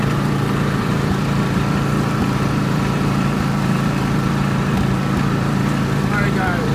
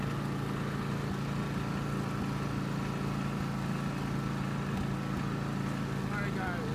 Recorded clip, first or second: second